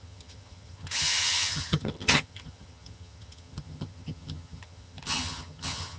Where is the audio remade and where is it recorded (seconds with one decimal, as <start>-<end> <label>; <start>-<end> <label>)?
0.0-6.0 remade